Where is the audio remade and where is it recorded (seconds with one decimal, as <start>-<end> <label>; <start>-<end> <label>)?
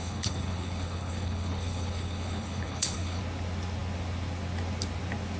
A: 0.0-3.2 remade; 3.2-5.4 recorded